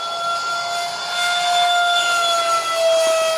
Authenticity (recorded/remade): recorded